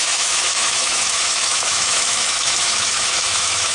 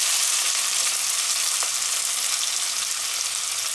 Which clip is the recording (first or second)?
second